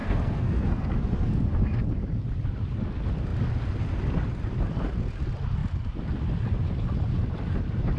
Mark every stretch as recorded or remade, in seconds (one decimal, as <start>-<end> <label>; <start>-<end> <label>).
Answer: 0.0-1.8 remade; 1.8-8.0 recorded